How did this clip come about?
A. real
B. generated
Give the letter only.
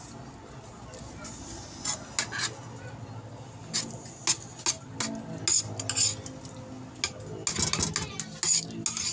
A